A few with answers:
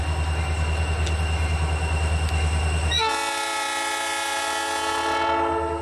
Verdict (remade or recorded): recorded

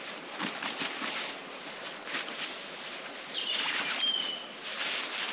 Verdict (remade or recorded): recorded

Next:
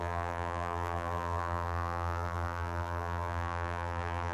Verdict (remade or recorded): remade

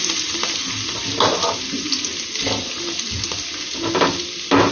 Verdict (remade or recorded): recorded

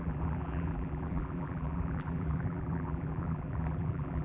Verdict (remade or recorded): remade